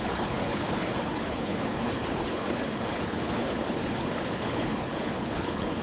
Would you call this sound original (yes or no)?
no